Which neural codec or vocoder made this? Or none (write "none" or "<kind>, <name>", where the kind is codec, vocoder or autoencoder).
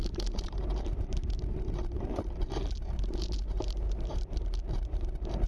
vocoder, BigVGAN v2